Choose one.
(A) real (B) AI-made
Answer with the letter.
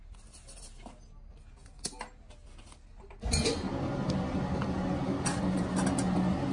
A